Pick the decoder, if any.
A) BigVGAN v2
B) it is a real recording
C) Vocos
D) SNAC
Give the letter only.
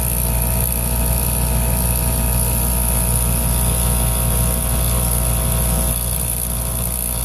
B